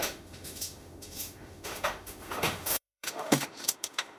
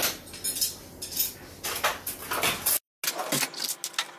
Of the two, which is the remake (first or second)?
first